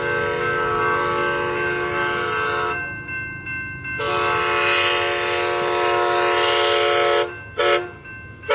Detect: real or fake real